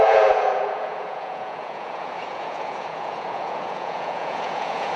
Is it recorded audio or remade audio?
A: remade